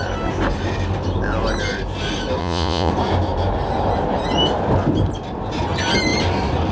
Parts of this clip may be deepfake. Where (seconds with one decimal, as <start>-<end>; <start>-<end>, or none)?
2.4-2.9